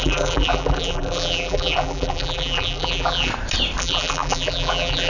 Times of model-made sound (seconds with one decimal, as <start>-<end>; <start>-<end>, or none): 0.0-3.3; 3.8-5.1